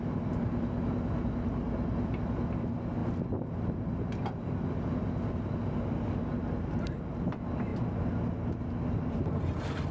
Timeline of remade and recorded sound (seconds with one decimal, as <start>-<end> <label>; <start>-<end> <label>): 0.0-9.9 recorded